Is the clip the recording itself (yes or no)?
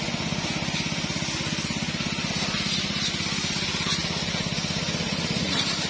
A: yes